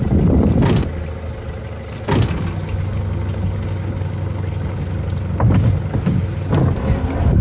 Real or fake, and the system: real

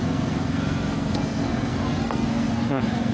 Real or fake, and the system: fake, codec, SNAC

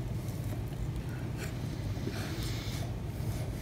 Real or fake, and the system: real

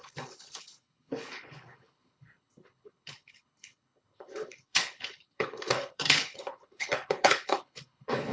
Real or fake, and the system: fake, codec, HILCodec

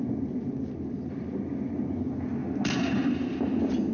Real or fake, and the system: real